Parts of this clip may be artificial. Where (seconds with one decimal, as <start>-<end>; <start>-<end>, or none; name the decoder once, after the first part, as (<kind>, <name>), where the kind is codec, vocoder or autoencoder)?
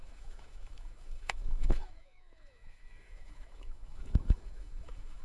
0.0-5.2 (autoencoder, DAC-VAE)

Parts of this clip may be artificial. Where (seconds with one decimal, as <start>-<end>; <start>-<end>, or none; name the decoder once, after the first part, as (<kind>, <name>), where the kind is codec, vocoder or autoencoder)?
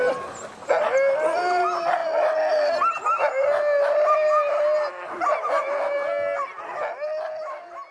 none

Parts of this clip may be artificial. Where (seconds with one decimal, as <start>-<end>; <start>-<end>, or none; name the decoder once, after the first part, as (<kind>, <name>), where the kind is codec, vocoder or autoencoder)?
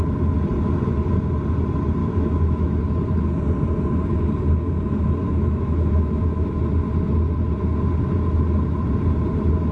2.0-2.8 (autoencoder, DAC-VAE); 5.2-6.6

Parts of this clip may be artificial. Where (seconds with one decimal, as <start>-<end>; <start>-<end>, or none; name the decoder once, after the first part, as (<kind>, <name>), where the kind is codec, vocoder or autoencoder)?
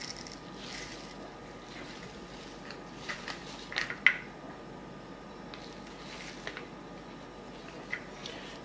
none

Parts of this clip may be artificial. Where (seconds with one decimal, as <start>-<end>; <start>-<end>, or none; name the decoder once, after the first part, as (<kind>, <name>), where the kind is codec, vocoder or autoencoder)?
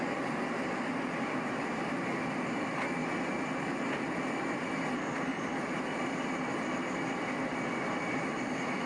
none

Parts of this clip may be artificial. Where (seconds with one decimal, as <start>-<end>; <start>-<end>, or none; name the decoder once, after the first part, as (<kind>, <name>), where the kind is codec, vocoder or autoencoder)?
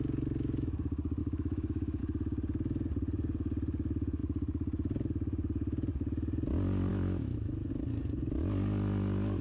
1.2-2.0 (autoencoder, DAC-VAE); 6.9-7.7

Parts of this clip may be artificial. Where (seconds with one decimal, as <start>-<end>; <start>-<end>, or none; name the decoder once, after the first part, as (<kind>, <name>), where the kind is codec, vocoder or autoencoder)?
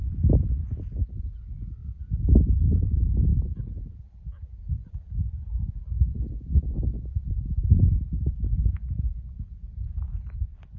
none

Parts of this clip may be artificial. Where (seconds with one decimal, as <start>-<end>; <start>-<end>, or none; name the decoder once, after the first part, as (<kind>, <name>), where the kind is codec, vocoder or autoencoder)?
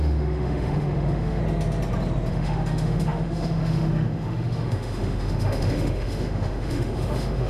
0.0-1.4 (autoencoder, DAC-VAE); 2.3-7.5